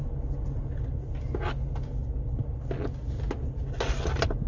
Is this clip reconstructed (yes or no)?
no